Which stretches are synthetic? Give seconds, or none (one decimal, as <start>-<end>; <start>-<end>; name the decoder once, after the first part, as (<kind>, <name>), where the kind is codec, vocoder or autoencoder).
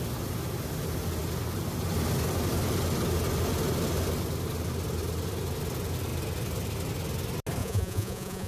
7.6-8.5 (vocoder, Vocos)